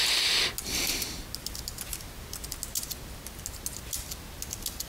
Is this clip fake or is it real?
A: real